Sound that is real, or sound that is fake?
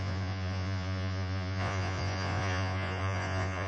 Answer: fake